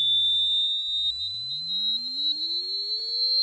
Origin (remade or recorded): recorded